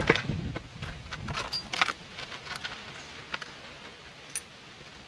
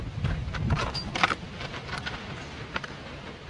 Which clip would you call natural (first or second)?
first